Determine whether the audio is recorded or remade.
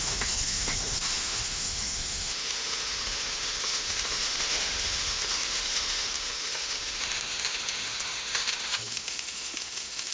remade